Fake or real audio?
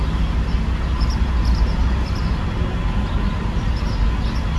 real